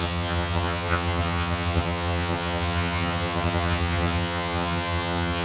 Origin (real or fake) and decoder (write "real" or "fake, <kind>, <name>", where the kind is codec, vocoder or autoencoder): fake, vocoder, HiFi-GAN